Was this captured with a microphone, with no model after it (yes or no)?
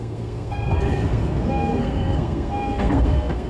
no